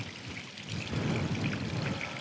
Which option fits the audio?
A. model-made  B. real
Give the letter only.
B